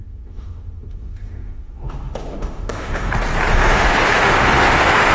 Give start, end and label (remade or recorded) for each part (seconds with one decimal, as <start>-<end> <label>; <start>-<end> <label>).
0.0-3.1 remade; 3.1-3.5 recorded; 3.5-5.1 remade